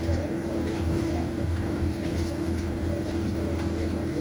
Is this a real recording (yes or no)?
no